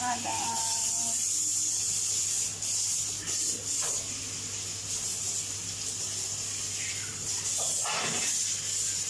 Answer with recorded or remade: recorded